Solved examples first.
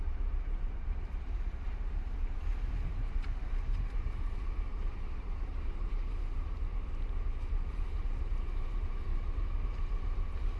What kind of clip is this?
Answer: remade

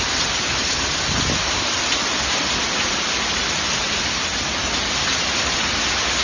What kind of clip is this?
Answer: recorded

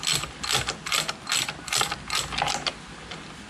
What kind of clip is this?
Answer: recorded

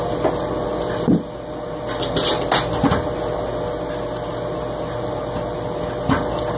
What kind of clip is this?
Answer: recorded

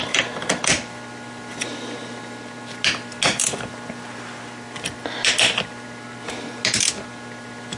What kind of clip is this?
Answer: recorded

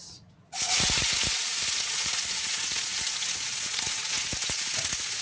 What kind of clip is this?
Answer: remade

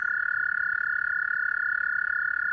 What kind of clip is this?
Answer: remade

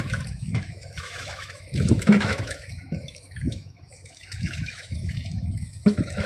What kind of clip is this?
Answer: remade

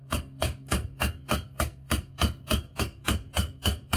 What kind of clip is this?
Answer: remade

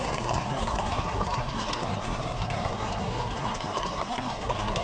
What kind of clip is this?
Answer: remade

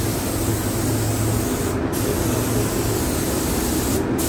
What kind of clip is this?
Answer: recorded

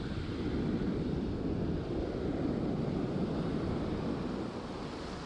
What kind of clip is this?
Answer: remade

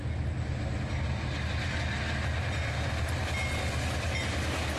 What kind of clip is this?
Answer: recorded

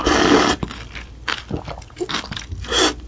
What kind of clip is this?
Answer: recorded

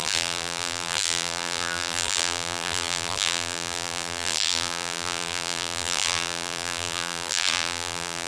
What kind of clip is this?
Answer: remade